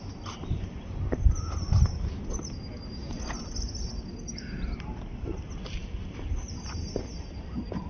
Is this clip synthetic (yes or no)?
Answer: no